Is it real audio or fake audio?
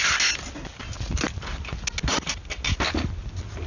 real